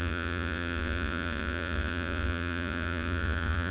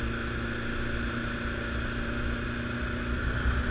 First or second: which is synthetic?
first